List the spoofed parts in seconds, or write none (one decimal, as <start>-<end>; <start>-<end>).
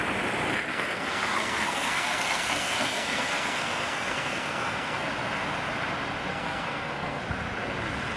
0.7-5.1; 6.3-7.2